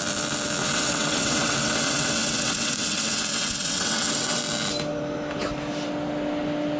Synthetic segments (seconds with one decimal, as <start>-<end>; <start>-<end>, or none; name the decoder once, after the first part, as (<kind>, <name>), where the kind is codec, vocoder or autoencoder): 0.6-4.4 (vocoder, WaveNeXt)